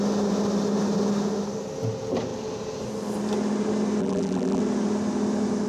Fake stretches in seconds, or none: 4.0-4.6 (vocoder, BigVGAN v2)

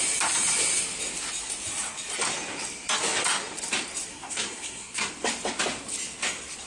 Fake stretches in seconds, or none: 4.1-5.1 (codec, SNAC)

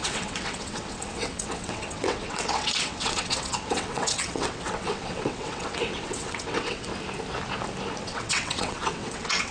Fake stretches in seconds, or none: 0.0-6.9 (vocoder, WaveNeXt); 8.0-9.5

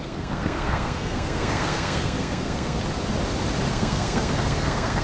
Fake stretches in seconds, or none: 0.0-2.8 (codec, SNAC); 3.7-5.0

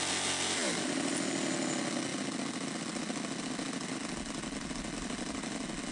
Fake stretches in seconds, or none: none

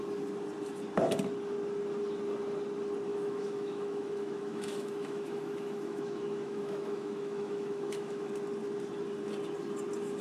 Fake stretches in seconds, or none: 3.1-8.3 (autoencoder, DAC-VAE)

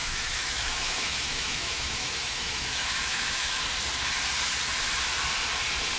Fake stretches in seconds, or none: 0.0-3.6 (autoencoder, DAC-VAE)

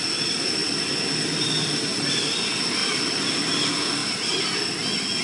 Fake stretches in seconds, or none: none